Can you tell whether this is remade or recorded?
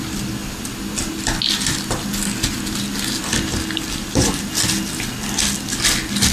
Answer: recorded